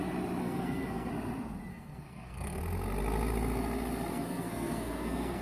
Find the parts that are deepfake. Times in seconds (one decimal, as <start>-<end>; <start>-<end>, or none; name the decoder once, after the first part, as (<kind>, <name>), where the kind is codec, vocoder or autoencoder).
0.4-1.1 (codec, SNAC); 1.7-2.6; 4.1-5.4